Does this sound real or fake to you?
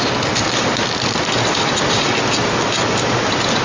real